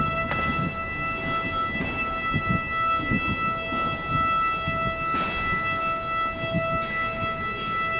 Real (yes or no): yes